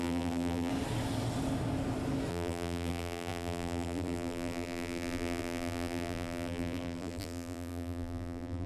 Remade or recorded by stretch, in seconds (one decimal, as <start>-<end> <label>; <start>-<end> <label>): 0.0-0.7 remade; 0.7-2.3 recorded; 2.3-8.7 remade